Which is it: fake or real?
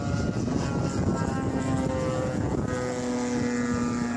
real